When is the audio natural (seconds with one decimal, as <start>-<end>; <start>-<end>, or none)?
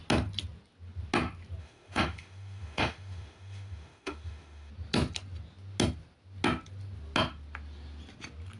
0.0-1.6; 4.7-8.6